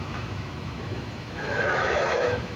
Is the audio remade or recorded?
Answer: remade